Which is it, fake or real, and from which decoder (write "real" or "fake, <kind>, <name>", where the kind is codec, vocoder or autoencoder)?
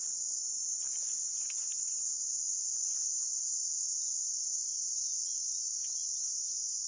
real